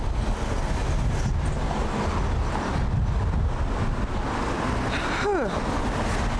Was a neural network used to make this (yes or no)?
no